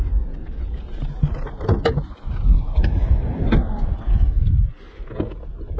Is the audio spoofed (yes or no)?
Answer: no